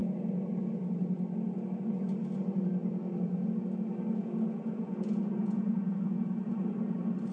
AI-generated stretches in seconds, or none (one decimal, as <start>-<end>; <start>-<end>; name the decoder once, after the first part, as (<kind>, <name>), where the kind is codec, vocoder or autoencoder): 4.2-6.5 (vocoder, Vocos)